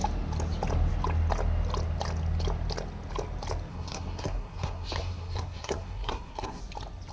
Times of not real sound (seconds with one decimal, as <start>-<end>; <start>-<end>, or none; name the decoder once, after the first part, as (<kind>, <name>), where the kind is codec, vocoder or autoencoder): 3.7-6.6 (codec, SNAC)